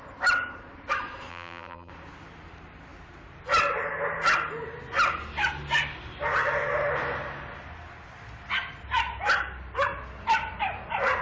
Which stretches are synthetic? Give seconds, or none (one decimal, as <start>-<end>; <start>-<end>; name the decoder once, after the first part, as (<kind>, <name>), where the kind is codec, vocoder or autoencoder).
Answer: 1.3-1.9 (vocoder, BigVGAN v2)